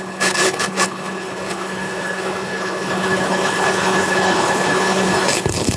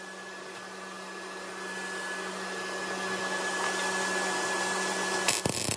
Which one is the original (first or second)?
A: second